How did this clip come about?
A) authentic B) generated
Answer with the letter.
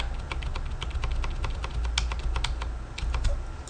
A